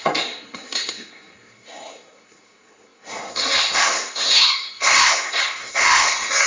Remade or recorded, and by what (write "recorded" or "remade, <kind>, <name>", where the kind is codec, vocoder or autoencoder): remade, codec, SNAC